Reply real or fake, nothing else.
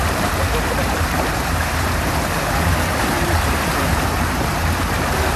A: fake